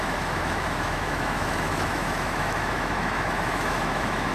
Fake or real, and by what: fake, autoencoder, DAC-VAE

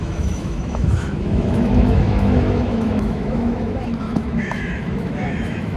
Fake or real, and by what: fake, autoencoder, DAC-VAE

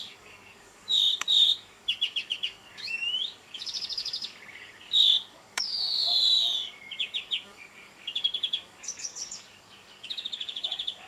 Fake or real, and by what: fake, codec, DAC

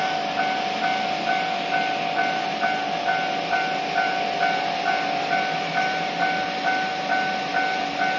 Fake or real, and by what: real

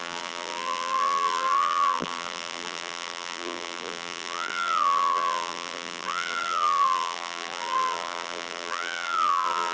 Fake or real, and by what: fake, vocoder, BigVGAN v2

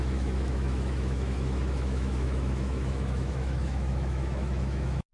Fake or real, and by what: fake, autoencoder, DAC-VAE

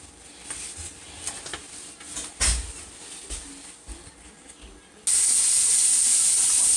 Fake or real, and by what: real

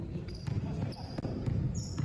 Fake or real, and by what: fake, vocoder, BigVGAN v2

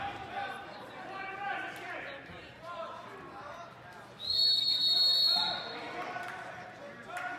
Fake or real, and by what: real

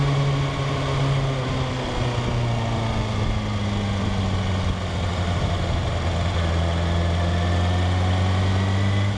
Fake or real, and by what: real